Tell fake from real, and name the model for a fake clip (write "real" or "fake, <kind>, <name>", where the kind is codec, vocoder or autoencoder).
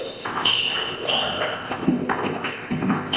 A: fake, codec, ZipCodec